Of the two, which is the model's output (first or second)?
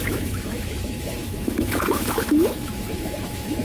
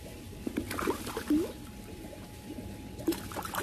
first